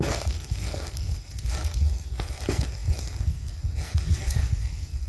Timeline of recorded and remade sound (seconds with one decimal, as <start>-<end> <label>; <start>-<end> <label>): 0.0-5.1 remade